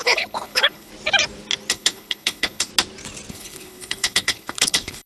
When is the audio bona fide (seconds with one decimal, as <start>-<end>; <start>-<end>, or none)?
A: 0.9-1.7; 2.7-3.3